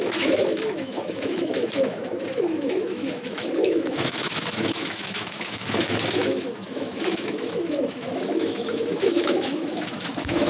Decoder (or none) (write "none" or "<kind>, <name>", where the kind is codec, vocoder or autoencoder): autoencoder, DAC-VAE